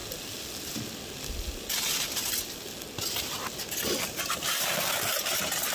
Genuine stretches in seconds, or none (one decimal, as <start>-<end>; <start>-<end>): 0.0-5.7